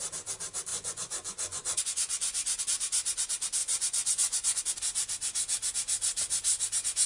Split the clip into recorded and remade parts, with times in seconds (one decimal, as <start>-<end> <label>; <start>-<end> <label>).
0.0-0.7 recorded; 0.7-2.6 remade; 2.6-3.6 recorded; 3.6-4.6 remade; 4.6-7.1 recorded